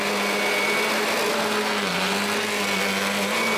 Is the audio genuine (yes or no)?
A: yes